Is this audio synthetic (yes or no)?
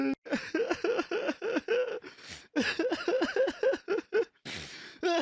no